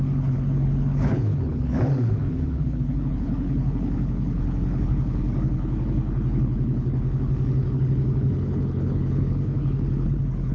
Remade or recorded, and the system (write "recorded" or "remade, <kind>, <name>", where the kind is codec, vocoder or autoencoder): remade, codec, HILCodec